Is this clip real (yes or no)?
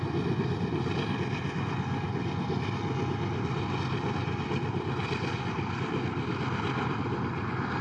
yes